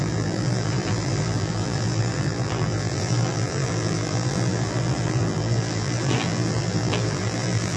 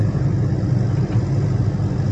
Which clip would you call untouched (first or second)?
second